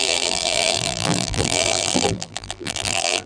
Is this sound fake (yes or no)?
yes